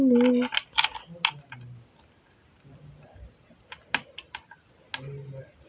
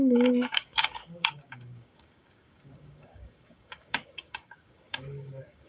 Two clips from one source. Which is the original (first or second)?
first